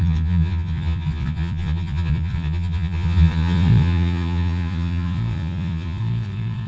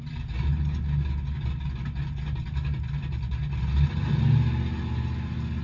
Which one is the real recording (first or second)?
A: second